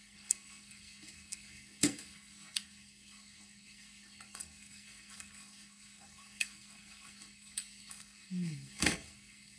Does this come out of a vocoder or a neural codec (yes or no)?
yes